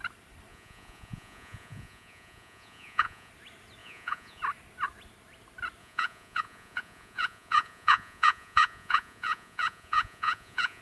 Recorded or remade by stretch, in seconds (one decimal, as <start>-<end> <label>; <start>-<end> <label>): 0.0-0.5 recorded; 0.5-3.3 remade; 3.3-3.8 recorded; 3.8-4.4 remade; 4.4-5.8 recorded; 5.8-10.8 remade